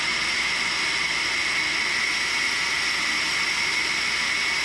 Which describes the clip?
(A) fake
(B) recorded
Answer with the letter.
B